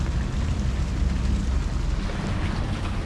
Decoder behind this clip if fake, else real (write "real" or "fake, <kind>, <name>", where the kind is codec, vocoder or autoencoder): real